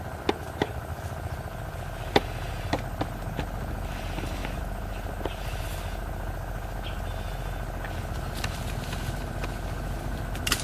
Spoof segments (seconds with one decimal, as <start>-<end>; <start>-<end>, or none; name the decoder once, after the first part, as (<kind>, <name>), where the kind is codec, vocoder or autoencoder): none